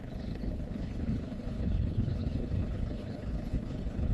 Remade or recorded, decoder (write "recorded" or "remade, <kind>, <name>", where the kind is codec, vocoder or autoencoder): remade, codec, HILCodec